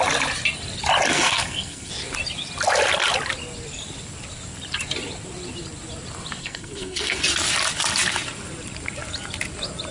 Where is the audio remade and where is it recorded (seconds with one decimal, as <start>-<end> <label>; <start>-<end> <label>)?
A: 0.0-1.1 recorded; 1.1-1.9 remade; 1.9-6.4 recorded; 6.4-7.2 remade; 7.2-9.9 recorded